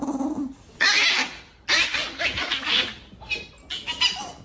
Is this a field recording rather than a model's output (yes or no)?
yes